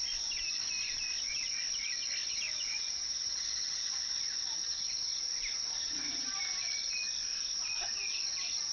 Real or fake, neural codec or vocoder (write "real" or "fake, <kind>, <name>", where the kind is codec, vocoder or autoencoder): real